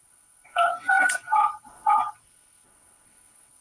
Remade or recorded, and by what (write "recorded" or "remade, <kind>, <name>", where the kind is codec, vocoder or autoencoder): remade, vocoder, WaveNeXt